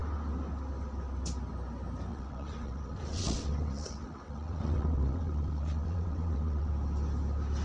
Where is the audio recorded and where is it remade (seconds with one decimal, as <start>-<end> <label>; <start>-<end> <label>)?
0.0-2.1 recorded; 2.1-6.7 remade; 6.7-7.6 recorded